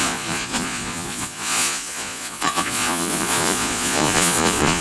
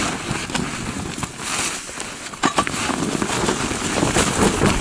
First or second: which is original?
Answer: second